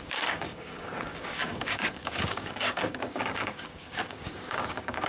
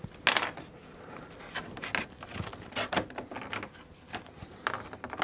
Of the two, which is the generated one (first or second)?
first